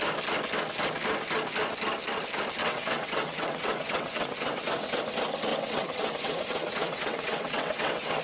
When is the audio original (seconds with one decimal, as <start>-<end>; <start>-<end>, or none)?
0.0-2.6; 5.0-5.5

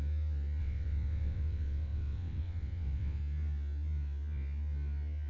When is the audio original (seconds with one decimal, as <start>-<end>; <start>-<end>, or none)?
0.0-0.6; 3.2-5.3